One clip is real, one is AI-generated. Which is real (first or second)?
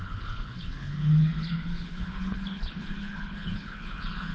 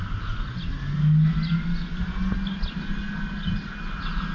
second